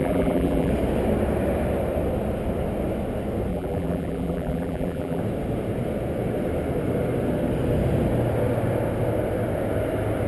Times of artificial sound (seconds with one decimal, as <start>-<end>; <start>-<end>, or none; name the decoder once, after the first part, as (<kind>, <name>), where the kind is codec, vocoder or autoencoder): 0.0-0.7 (vocoder, BigVGAN v2); 3.5-5.2